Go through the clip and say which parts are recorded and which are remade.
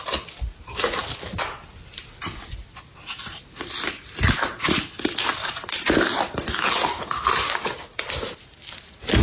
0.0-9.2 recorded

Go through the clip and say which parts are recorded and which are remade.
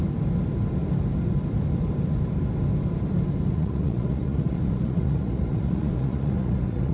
0.0-3.5 recorded; 3.5-6.9 remade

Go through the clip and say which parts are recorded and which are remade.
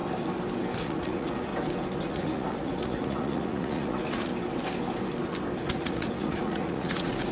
0.0-0.8 recorded; 0.8-1.5 remade; 1.5-2.1 recorded; 2.1-4.3 remade; 4.3-5.7 recorded; 5.7-7.3 remade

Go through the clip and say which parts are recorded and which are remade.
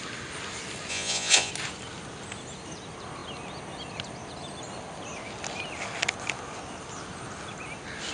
0.0-0.9 recorded; 0.9-1.5 remade; 1.5-8.1 recorded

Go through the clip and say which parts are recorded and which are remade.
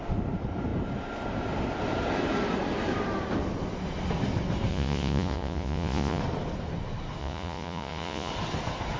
0.0-4.7 recorded; 4.7-6.2 remade; 6.2-7.2 recorded; 7.2-8.3 remade; 8.3-9.0 recorded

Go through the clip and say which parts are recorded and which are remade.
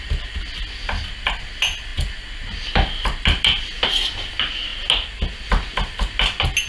0.0-6.7 recorded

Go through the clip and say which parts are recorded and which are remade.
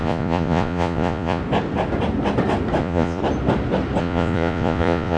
0.0-1.4 remade; 1.4-2.8 recorded; 2.8-3.2 remade; 3.2-4.0 recorded; 4.0-5.2 remade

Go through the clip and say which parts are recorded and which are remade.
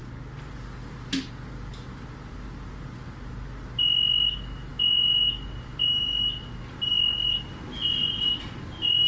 0.0-9.1 recorded